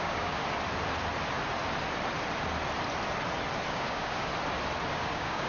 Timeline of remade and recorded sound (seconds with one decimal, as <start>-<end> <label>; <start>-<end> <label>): 0.0-0.4 remade; 0.4-3.7 recorded; 3.7-4.3 remade; 4.3-4.9 recorded; 4.9-5.5 remade